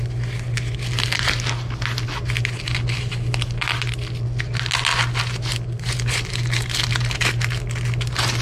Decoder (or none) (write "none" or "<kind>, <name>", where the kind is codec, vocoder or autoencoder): none